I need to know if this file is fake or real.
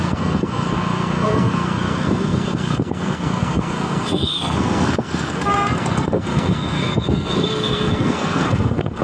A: fake